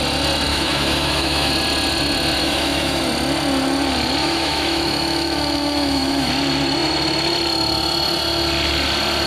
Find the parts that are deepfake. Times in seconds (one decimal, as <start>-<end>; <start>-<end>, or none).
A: 0.5-1.5; 2.4-3.0; 4.2-6.3